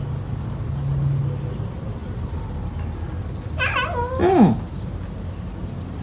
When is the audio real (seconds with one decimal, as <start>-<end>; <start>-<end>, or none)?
0.0-6.0

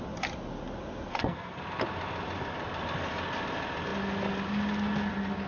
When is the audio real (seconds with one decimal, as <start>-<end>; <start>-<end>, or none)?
0.0-1.1; 1.6-5.5